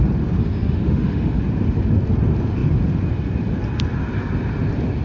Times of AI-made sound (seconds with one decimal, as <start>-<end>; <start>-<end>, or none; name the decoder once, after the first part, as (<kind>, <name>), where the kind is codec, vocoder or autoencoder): 0.4-1.4 (autoencoder, DAC-VAE)

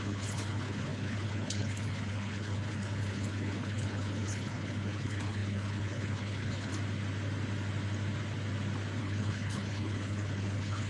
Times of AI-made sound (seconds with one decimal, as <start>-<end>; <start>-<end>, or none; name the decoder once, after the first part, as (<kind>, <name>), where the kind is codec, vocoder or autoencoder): 0.0-6.7 (codec, HILCodec); 9.0-10.9

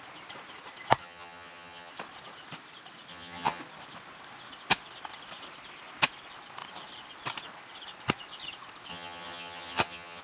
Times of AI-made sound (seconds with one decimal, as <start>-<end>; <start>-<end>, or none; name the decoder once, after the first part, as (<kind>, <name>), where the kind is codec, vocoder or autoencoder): 1.0-1.9 (vocoder, HiFi-GAN); 3.1-3.6; 8.9-10.2

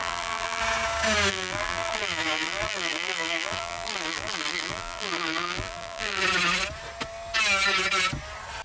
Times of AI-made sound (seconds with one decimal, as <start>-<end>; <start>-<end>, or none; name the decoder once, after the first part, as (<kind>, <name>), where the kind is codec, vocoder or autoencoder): 0.0-0.6 (vocoder, BigVGAN v2); 1.3-6.2

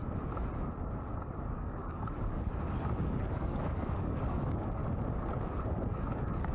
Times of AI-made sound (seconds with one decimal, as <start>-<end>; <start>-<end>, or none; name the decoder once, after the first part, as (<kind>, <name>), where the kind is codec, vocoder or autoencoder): 1.1-4.8 (codec, DAC); 5.9-6.5

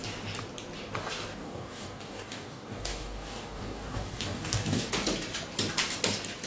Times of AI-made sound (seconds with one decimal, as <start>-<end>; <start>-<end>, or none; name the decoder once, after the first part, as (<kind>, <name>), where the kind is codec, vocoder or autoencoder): 1.3-4.9 (codec, DAC)

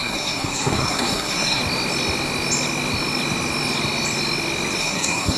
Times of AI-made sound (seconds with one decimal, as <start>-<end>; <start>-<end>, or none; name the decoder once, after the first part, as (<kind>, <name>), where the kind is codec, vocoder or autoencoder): 0.0-1.6 (codec, SNAC); 4.8-5.4